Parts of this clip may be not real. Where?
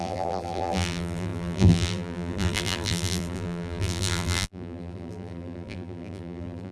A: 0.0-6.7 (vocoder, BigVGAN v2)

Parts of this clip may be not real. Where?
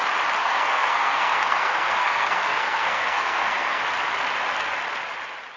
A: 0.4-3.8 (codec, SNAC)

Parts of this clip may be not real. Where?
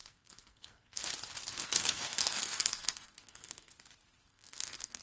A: 0.0-1.1 (codec, SNAC); 1.5-3.7; 4.3-5.0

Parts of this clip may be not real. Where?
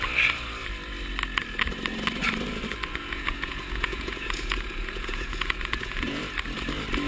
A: 2.9-6.2 (vocoder, Vocos)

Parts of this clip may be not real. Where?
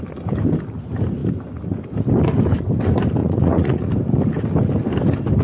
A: 3.2-3.9 (vocoder, Vocos)